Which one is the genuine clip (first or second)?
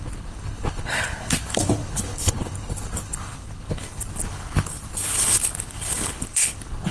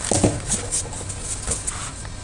second